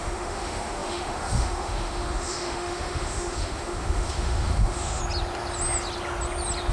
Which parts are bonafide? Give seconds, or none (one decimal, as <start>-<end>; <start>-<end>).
5.0-6.7